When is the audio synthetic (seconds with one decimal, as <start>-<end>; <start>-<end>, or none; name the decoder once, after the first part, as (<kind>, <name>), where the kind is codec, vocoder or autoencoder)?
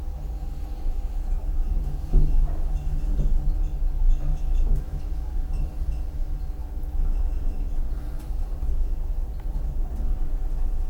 4.3-5.0 (autoencoder, DAC-VAE)